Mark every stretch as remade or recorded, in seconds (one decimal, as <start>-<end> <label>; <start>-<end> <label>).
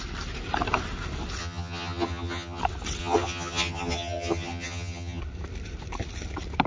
0.0-1.4 recorded; 1.4-2.6 remade; 2.6-3.0 recorded; 3.0-5.2 remade; 5.2-6.7 recorded